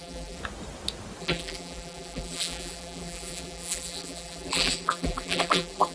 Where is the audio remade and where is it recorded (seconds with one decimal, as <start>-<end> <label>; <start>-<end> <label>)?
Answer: 0.0-0.4 remade; 0.4-1.2 recorded; 1.2-5.9 remade